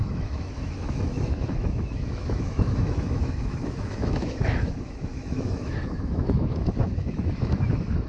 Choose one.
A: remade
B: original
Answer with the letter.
A